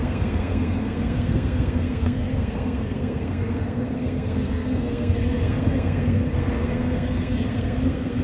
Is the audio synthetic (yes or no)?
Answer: yes